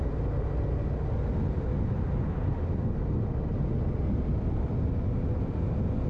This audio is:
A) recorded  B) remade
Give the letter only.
A